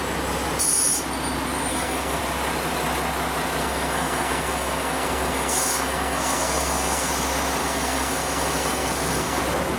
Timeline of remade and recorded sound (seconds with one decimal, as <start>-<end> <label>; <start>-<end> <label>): 0.0-1.7 recorded; 1.7-2.2 remade; 2.2-3.6 recorded; 3.6-7.1 remade; 7.1-7.6 recorded; 7.6-9.4 remade; 9.4-9.8 recorded